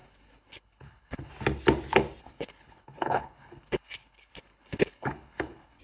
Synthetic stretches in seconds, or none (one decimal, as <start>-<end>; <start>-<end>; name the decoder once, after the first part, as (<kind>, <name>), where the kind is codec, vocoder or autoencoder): 0.0-1.3 (codec, HILCodec); 2.2-5.8